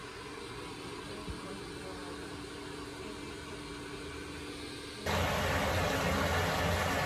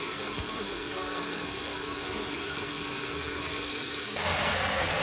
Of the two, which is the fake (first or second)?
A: second